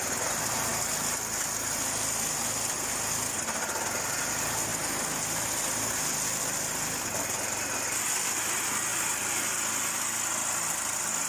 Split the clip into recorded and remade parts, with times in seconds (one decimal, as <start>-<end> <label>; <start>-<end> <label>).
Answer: 0.0-11.3 recorded